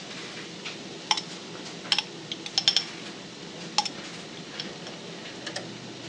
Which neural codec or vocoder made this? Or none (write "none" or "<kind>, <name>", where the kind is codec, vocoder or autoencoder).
none